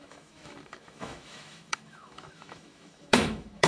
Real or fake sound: fake